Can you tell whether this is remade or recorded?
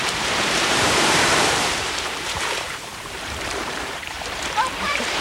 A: remade